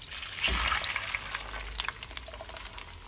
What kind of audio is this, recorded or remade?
recorded